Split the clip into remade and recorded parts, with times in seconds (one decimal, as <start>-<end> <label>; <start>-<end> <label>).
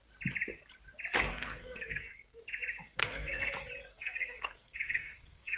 0.0-1.3 recorded; 1.3-2.4 remade; 2.4-3.0 recorded; 3.0-3.5 remade; 3.5-3.9 recorded; 3.9-5.6 remade